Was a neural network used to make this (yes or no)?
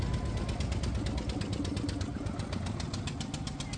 no